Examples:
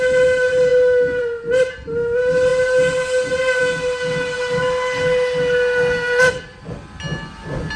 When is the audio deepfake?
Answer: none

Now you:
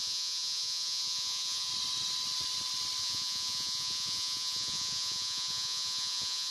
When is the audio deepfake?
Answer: 0.0-1.7 (vocoder, Vocos); 3.0-6.5

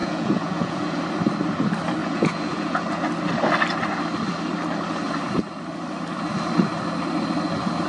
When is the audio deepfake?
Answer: 0.0-1.0 (vocoder, Vocos); 2.0-2.9